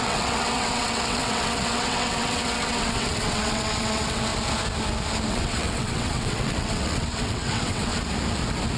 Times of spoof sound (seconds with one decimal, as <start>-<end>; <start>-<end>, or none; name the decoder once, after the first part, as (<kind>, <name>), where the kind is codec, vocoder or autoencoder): 0.0-4.3 (vocoder, WaveNeXt); 5.3-7.9